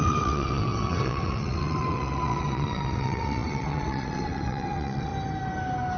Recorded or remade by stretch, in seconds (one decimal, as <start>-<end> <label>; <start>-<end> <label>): 0.0-5.1 remade; 5.1-6.0 recorded